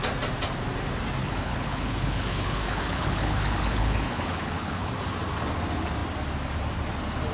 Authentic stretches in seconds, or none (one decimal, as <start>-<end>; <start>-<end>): 0.0-1.2; 4.9-7.3